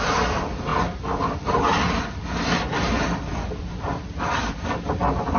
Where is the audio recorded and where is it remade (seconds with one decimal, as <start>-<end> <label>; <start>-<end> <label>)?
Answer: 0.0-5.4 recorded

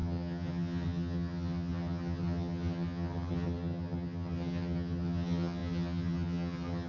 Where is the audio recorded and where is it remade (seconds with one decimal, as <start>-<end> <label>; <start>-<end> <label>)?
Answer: 0.0-6.9 remade

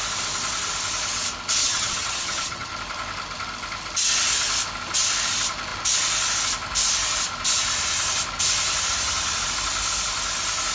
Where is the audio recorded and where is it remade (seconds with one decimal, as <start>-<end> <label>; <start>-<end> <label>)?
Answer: 0.0-1.6 recorded; 1.6-2.7 remade; 2.7-10.7 recorded